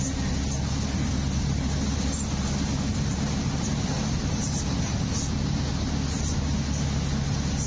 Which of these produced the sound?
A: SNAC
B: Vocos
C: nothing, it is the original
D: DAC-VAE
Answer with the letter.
C